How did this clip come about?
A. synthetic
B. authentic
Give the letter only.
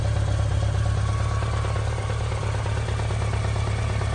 B